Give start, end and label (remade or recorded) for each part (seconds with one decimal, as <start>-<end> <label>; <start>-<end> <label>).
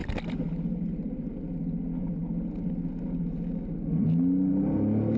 0.0-5.2 recorded